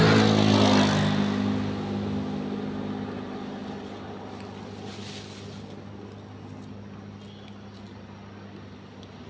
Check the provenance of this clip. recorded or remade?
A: recorded